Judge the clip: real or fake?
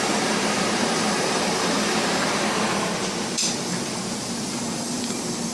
fake